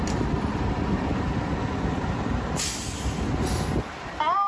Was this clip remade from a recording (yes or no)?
no